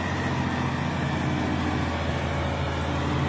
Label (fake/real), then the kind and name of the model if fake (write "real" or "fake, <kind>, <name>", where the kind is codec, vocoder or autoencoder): real